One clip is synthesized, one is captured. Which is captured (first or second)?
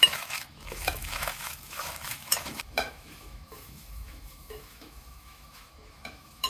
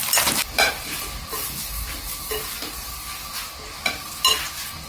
second